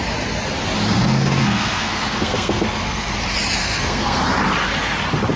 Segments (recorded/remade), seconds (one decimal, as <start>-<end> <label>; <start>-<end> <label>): 0.0-1.0 recorded; 1.0-3.1 remade; 3.1-3.6 recorded; 3.6-4.2 remade; 4.2-5.4 recorded